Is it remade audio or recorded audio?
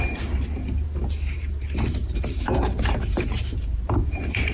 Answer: remade